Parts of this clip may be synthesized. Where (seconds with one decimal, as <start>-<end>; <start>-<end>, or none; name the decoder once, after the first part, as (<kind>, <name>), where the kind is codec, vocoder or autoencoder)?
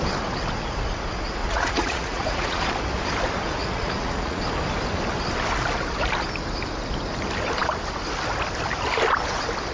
1.4-2.6 (vocoder, Vocos); 3.6-4.4